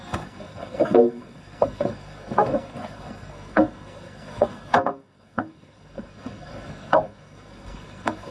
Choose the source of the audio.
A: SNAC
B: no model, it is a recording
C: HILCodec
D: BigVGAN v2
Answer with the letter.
A